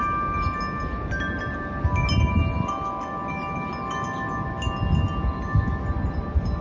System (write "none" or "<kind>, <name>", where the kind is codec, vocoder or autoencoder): none